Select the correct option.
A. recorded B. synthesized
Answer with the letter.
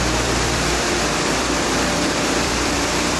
B